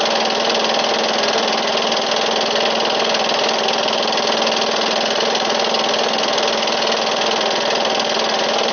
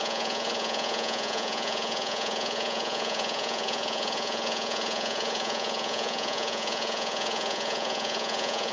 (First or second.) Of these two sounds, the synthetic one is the second